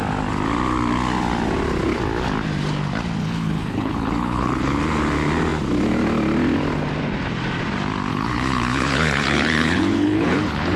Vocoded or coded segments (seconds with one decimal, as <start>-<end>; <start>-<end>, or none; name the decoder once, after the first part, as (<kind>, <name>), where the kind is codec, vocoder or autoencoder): 3.2-4.8 (codec, HILCodec); 8.1-10.8